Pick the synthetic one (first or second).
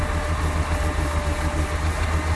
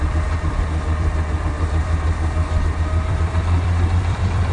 second